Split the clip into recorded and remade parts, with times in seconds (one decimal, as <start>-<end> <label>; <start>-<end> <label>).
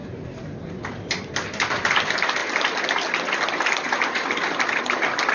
0.0-5.3 recorded